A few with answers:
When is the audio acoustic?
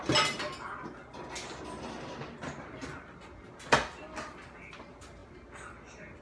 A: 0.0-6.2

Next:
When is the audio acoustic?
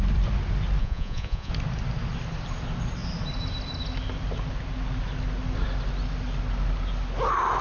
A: 0.0-0.8; 1.5-7.6